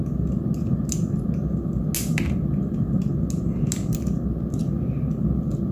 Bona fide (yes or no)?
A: yes